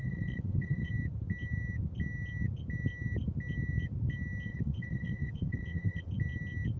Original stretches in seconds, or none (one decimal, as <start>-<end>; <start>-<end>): 0.9-4.5; 6.1-6.8